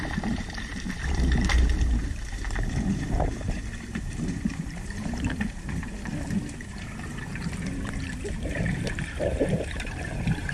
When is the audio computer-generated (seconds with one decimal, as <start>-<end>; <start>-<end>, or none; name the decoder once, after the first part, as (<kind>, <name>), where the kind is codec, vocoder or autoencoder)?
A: 0.0-10.5 (vocoder, BigVGAN v2)